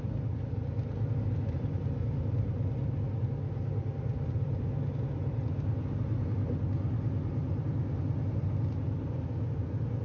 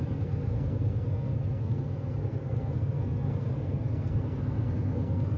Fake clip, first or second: second